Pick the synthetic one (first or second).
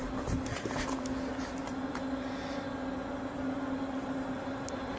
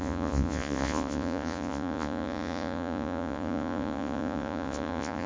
second